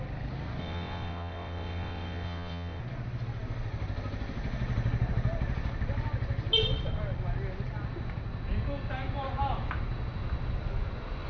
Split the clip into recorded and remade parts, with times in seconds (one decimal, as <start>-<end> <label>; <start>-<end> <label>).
0.0-0.6 recorded; 0.6-2.8 remade; 2.8-11.3 recorded